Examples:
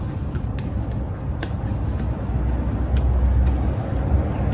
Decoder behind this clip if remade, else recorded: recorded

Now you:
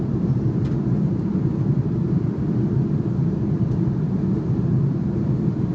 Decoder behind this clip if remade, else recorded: remade, vocoder, BigVGAN v2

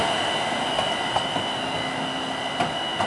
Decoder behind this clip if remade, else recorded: recorded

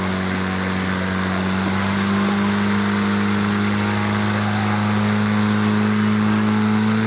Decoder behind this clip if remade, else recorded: recorded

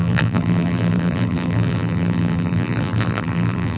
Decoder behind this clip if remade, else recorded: remade, vocoder, BigVGAN v2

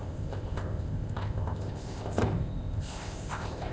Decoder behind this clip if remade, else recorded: remade, codec, ZipCodec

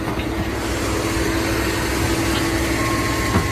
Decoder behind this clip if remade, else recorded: recorded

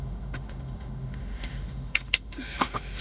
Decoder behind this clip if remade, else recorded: remade, autoencoder, DAC-VAE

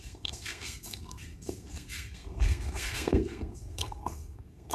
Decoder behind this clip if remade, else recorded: remade, codec, SNAC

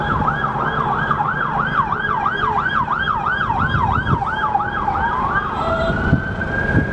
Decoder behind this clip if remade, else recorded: remade, vocoder, BigVGAN v2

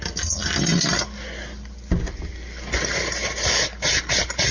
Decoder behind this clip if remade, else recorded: recorded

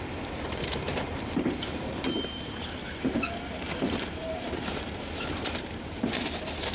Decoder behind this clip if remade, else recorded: remade, vocoder, BigVGAN v2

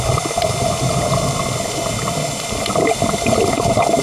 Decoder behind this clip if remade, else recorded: recorded